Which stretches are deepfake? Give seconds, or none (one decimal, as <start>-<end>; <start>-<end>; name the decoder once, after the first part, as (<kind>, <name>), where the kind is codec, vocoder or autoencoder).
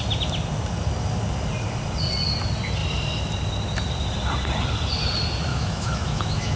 5.5-6.6 (autoencoder, DAC-VAE)